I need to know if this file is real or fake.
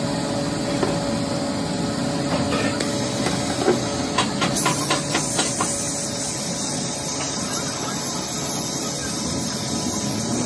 real